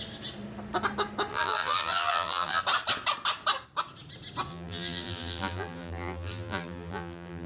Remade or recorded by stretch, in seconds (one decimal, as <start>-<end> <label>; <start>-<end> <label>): 0.0-1.3 recorded; 1.3-2.6 remade; 2.6-4.5 recorded; 4.5-7.5 remade